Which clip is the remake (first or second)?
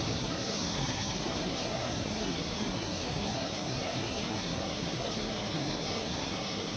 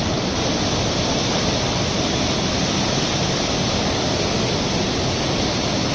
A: first